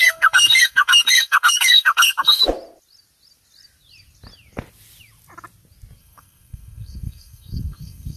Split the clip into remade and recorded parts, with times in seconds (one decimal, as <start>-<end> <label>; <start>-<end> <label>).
0.0-2.4 remade; 2.4-6.0 recorded; 6.0-8.2 remade